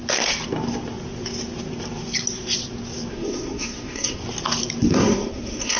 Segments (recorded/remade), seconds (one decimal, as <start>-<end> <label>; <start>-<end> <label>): 0.0-3.1 recorded; 3.1-4.2 remade; 4.2-4.9 recorded; 4.9-5.8 remade